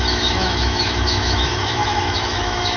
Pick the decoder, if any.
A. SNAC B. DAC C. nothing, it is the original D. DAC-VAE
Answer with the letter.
D